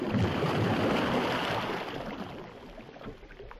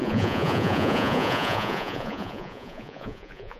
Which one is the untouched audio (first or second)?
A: first